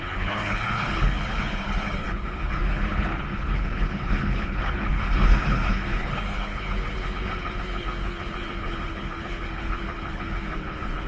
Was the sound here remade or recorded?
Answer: remade